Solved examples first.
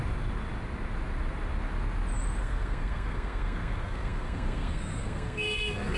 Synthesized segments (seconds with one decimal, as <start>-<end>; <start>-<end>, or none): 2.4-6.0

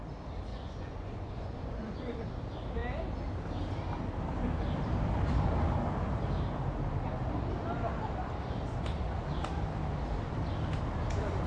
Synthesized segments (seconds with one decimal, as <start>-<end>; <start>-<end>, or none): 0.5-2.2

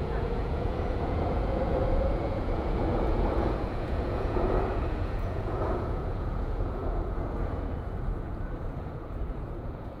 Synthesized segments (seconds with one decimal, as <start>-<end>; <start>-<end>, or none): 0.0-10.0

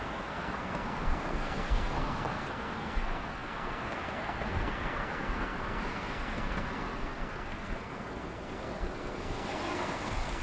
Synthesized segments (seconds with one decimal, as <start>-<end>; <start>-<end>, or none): 0.0-10.4

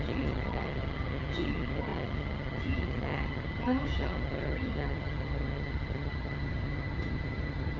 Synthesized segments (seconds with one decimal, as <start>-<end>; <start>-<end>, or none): 0.0-7.8

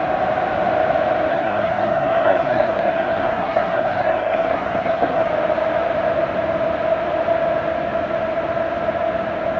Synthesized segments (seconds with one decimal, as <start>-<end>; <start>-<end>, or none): 1.3-5.3